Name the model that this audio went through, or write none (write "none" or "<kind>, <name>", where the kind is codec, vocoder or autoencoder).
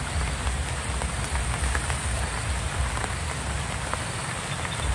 none